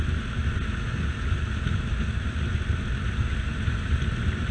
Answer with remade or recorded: recorded